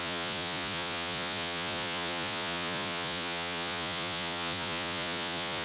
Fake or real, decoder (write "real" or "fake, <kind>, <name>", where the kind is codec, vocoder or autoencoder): fake, vocoder, Vocos